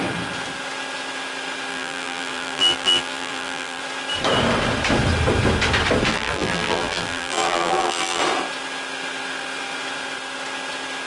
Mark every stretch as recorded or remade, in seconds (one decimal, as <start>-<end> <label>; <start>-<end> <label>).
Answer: 0.0-1.7 recorded; 1.7-3.8 remade; 3.8-6.1 recorded; 6.1-8.2 remade; 8.2-11.1 recorded